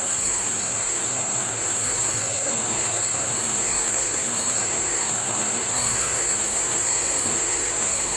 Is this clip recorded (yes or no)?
no